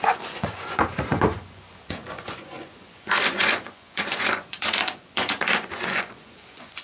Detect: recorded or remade remade